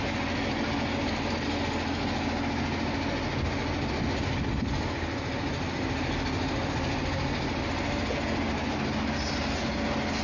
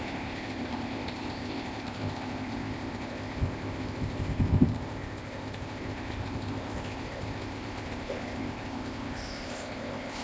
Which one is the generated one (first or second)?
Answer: second